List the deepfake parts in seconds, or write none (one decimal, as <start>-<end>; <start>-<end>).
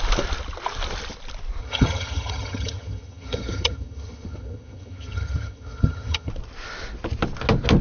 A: 1.6-6.3